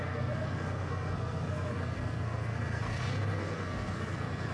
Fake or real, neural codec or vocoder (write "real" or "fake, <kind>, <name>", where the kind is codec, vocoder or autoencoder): fake, codec, SNAC